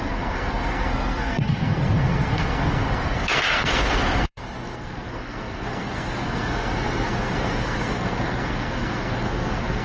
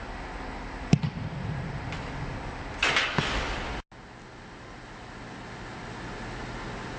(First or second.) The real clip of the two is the second